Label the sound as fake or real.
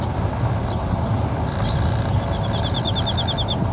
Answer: real